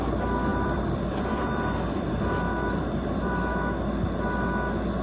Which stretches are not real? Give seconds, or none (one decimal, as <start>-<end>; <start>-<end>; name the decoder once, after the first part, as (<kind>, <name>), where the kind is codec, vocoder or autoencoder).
0.5-3.5 (vocoder, BigVGAN v2)